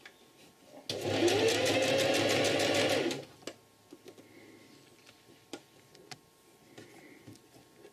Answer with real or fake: real